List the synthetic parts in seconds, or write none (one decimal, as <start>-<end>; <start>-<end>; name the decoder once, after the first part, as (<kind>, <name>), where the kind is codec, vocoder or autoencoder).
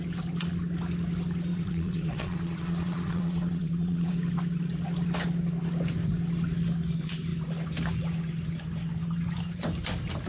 1.5-4.1 (vocoder, Vocos)